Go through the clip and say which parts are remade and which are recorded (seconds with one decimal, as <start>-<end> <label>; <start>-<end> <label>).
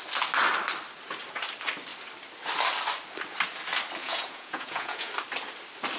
0.0-4.0 recorded; 4.0-5.1 remade; 5.1-6.0 recorded